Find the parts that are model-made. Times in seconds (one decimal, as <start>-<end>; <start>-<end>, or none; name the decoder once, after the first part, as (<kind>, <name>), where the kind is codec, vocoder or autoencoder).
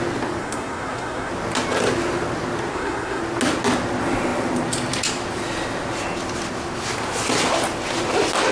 0.4-1.3 (codec, SNAC); 2.7-3.2